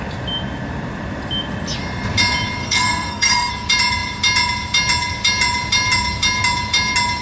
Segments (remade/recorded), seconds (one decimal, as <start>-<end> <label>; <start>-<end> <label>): 0.0-2.6 recorded; 2.6-3.5 remade; 3.5-7.2 recorded